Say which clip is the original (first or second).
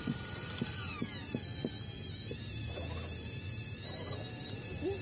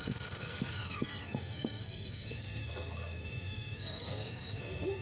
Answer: first